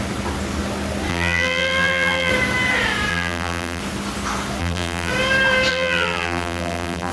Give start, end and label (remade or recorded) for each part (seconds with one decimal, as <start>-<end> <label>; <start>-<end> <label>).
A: 0.0-1.1 recorded; 1.1-2.3 remade; 2.3-3.1 recorded; 3.1-3.8 remade; 3.8-4.6 recorded; 4.6-5.1 remade; 5.1-5.7 recorded; 5.7-7.1 remade